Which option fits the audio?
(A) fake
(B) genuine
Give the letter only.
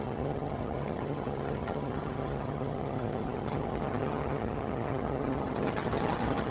A